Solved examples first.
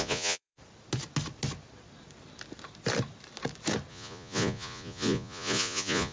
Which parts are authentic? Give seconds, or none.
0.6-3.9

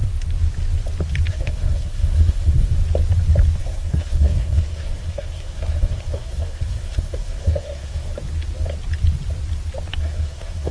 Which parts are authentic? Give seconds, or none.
0.0-1.3; 2.8-3.6; 8.1-10.0

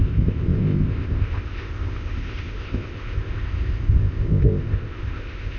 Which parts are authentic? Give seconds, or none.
none

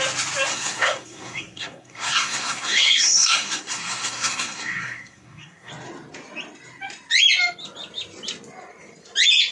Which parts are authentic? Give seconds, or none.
0.0-0.5; 5.7-9.5